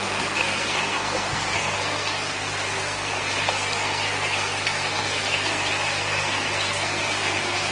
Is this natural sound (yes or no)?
no